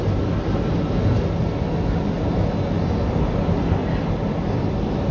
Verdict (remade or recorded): recorded